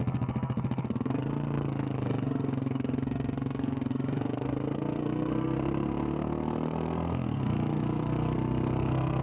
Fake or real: fake